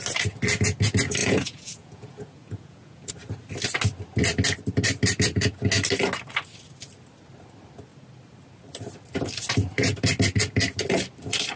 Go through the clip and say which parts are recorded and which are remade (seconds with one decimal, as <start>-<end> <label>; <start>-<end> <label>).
0.0-1.2 recorded; 1.2-3.1 remade; 3.1-11.6 recorded